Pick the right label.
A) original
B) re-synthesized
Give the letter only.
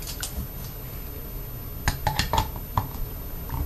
A